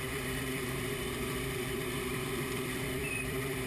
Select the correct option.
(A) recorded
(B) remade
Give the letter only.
B